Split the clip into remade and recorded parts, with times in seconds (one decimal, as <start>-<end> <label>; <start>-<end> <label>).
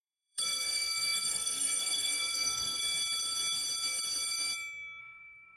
0.0-2.8 remade; 2.8-5.0 recorded; 5.0-5.6 remade